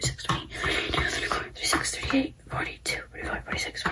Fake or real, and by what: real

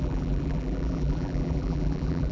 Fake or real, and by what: fake, vocoder, BigVGAN v2